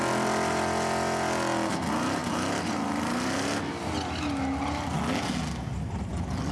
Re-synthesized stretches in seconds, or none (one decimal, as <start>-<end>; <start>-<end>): none